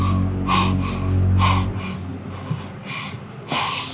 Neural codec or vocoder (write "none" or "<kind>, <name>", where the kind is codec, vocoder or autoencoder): none